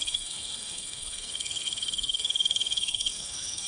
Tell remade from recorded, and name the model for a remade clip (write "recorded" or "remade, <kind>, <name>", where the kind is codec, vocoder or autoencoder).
remade, codec, SNAC